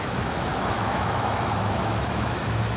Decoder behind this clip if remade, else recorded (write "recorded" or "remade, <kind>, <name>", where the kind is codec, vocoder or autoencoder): remade, autoencoder, DAC-VAE